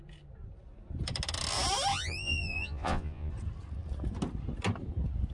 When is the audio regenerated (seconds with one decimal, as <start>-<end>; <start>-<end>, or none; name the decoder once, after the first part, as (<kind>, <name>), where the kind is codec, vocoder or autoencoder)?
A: 1.9-3.3 (vocoder, Vocos)